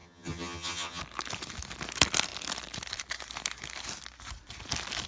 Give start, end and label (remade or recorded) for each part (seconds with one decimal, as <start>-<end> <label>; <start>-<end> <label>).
0.0-1.0 remade; 1.0-5.1 recorded